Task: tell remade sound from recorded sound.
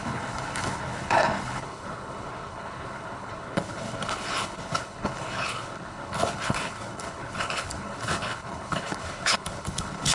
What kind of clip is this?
remade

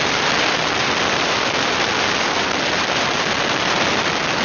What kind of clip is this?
remade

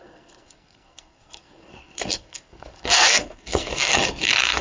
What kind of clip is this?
remade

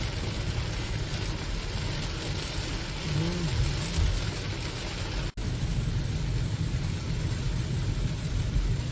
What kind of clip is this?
recorded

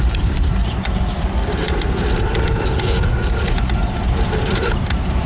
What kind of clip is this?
remade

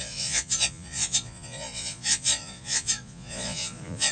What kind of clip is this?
remade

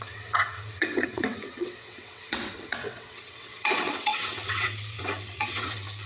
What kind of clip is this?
remade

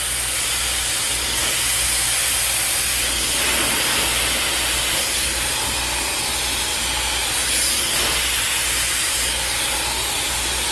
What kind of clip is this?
recorded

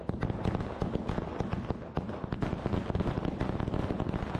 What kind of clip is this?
recorded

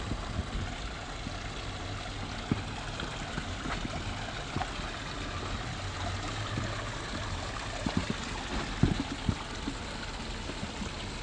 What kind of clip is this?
recorded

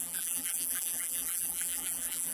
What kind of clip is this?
remade